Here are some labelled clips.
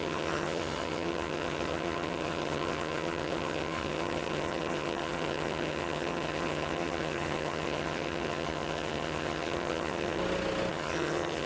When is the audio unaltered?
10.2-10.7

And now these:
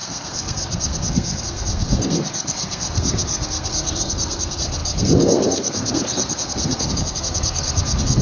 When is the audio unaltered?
none

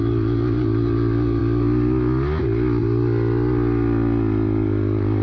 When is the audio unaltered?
0.0-5.2

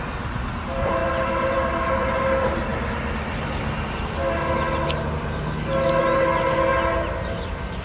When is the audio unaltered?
2.7-6.0; 6.7-7.8